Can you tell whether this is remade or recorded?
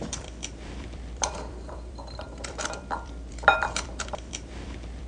remade